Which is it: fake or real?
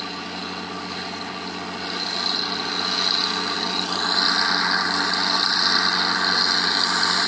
fake